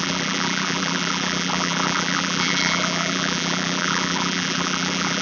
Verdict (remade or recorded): remade